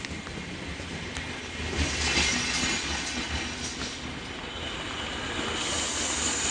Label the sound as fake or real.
real